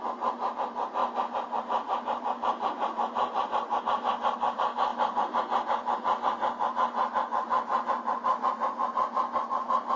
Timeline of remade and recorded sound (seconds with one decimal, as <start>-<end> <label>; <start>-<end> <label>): 0.0-1.0 recorded; 1.0-3.8 remade; 3.8-4.9 recorded; 4.9-5.4 remade; 5.4-7.7 recorded; 7.7-8.7 remade; 8.7-10.0 recorded